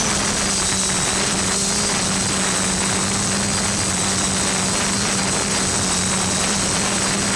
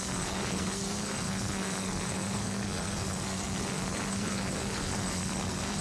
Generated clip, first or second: second